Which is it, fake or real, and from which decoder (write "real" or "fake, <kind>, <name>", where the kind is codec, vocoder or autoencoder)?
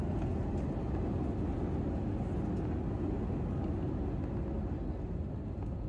real